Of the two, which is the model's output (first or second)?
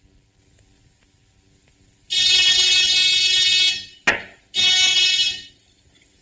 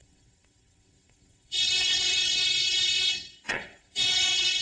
second